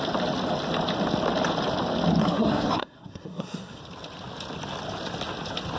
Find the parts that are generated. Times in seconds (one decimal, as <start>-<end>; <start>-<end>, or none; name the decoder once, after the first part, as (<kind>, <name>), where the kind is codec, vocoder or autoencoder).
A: 2.2-3.8 (codec, SNAC)